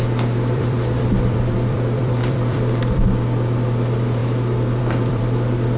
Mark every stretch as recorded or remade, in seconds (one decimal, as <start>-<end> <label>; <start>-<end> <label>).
0.0-4.2 remade; 4.2-4.8 recorded; 4.8-5.8 remade